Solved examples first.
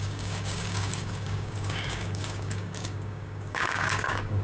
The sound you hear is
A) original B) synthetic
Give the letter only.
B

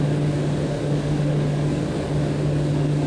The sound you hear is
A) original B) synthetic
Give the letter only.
B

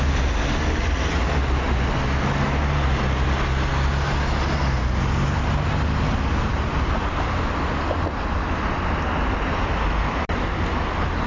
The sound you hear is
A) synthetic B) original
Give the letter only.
B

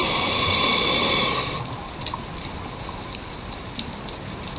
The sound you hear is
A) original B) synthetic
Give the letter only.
A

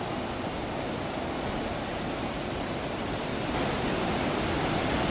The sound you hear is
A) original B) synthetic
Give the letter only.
A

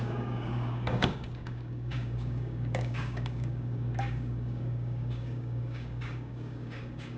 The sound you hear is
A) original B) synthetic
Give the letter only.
B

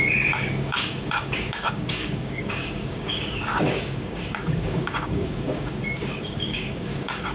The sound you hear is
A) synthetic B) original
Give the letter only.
A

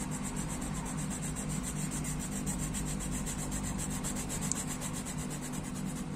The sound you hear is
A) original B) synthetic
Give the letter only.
A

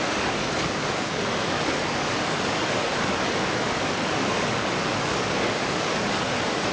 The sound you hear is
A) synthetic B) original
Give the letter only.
A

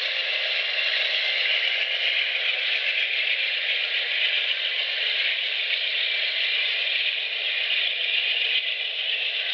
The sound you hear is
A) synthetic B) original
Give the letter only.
B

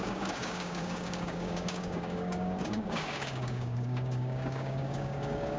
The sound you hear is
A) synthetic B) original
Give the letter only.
A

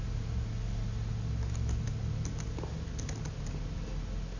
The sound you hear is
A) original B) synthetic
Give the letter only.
A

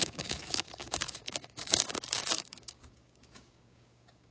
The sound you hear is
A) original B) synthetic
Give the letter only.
B